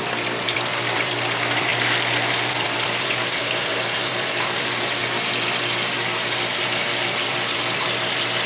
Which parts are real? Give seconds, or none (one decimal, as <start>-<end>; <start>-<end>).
5.0-6.6